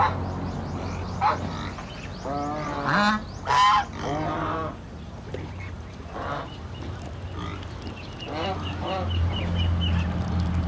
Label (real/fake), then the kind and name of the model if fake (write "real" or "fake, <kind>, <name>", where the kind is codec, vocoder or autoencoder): real